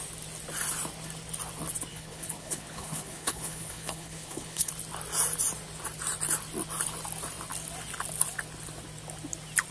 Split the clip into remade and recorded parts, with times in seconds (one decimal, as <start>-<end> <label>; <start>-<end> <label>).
0.0-1.9 recorded; 1.9-4.7 remade; 4.7-9.7 recorded